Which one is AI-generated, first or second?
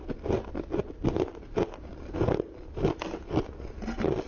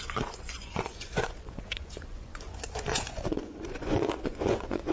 second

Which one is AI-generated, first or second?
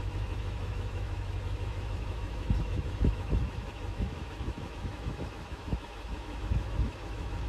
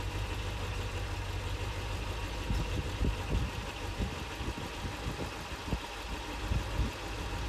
first